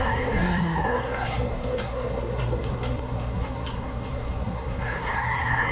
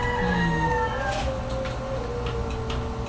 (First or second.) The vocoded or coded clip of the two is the first